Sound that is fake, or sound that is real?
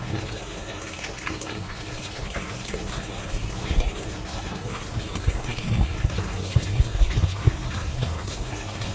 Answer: fake